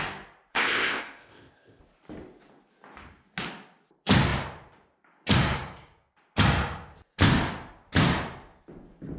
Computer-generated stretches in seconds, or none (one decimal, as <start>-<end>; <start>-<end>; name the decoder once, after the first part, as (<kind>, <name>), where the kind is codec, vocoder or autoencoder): 0.5-1.8 (codec, ZipCodec)